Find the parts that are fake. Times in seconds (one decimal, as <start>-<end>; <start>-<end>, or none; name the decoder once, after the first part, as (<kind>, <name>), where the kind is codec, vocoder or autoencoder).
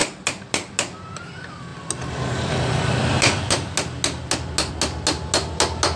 none